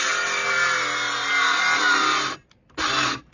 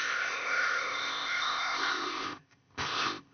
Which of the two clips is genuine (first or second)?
first